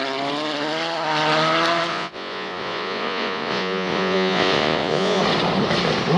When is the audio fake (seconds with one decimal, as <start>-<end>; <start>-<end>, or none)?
1.9-5.2